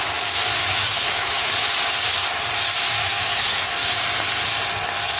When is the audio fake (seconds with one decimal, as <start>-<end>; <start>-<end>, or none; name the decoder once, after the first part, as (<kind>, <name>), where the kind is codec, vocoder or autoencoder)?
0.6-1.5 (autoencoder, DAC-VAE); 3.0-3.7